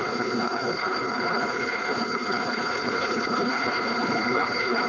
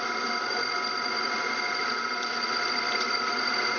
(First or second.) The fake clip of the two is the first